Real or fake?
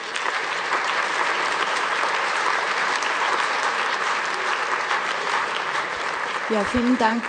fake